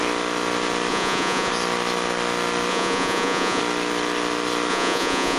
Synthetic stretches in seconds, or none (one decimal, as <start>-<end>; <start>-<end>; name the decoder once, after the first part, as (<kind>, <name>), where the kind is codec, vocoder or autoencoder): 0.9-1.5 (vocoder, Vocos); 2.7-3.6; 4.7-5.4